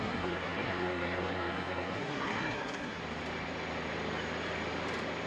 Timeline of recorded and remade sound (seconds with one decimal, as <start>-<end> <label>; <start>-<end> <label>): 0.0-3.0 remade; 3.0-5.3 recorded